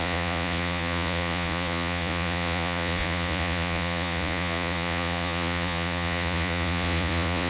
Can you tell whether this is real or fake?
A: fake